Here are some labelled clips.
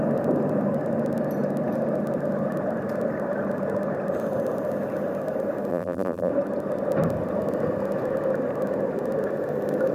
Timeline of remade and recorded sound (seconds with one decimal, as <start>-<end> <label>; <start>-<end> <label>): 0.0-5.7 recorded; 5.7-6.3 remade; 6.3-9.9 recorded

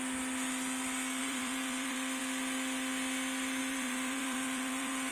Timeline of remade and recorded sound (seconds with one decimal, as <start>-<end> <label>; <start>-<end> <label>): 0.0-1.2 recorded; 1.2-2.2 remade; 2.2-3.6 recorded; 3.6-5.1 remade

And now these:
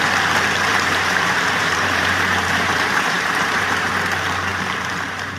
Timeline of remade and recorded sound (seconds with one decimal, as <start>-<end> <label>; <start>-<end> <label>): 0.0-0.7 recorded; 0.7-3.9 remade; 3.9-4.5 recorded; 4.5-5.4 remade